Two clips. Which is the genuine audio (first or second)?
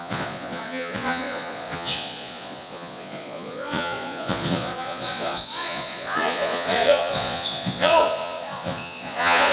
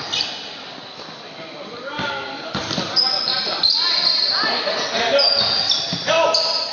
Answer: second